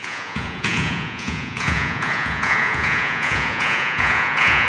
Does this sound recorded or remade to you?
remade